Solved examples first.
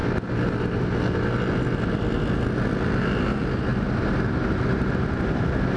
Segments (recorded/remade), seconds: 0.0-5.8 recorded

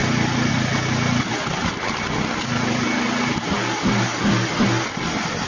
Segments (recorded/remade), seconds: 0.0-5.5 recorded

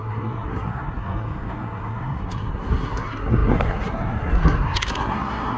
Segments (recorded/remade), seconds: 0.0-5.6 remade